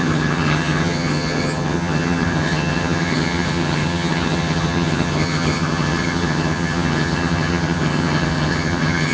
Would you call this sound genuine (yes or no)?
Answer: no